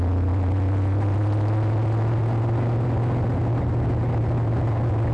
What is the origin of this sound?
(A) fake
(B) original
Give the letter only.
B